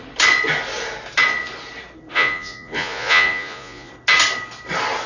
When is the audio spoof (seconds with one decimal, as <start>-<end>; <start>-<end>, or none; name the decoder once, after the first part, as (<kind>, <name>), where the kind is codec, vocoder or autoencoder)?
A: 2.1-3.9 (vocoder, Vocos)